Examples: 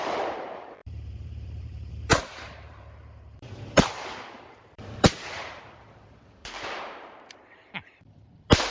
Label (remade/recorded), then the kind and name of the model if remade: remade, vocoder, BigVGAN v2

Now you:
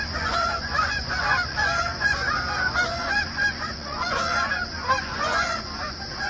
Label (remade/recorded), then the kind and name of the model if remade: remade, vocoder, Vocos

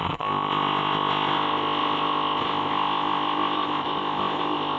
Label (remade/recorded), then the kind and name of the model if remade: remade, codec, ZipCodec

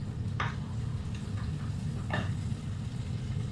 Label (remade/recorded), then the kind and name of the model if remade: recorded